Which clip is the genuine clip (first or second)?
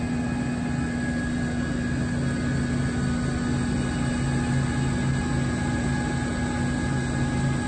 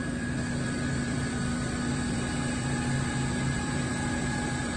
first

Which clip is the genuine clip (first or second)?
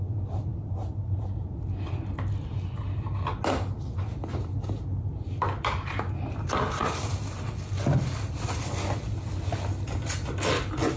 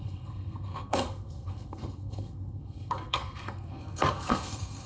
first